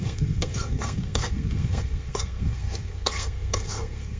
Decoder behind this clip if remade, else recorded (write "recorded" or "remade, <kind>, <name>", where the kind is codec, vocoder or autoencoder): remade, codec, SNAC